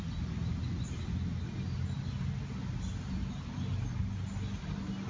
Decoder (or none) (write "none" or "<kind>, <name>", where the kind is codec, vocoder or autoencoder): none